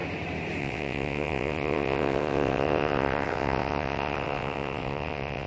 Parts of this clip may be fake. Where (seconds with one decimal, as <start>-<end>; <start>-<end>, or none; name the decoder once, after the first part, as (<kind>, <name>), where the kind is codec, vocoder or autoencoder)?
0.6-5.5 (vocoder, WaveNeXt)